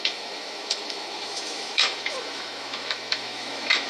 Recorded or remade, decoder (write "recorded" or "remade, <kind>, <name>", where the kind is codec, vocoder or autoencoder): remade, autoencoder, DAC-VAE